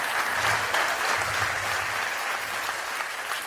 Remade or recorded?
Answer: recorded